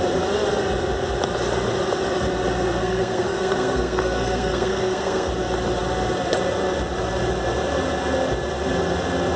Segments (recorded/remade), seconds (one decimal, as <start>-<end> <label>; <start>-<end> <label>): 0.0-2.8 recorded; 2.8-5.3 remade; 5.3-9.4 recorded